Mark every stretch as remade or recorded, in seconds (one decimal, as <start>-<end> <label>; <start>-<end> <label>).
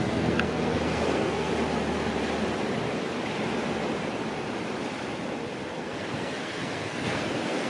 0.0-1.5 remade; 1.5-5.7 recorded; 5.7-7.7 remade